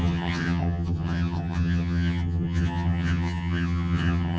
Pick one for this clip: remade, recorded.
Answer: remade